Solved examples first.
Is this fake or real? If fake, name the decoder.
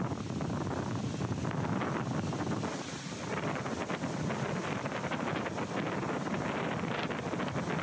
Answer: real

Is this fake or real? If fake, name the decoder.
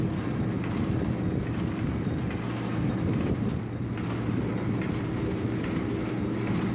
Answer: real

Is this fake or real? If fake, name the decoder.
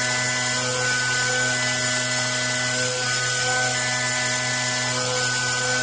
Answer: real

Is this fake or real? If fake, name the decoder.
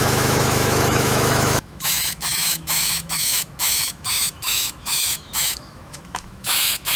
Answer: fake, autoencoder, DAC-VAE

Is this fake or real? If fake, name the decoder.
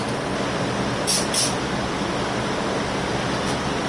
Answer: real